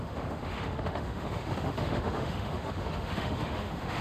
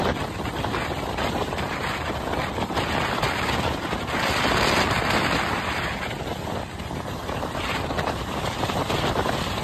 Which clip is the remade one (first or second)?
first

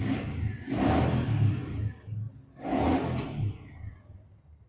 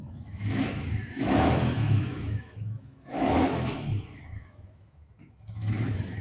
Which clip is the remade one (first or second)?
second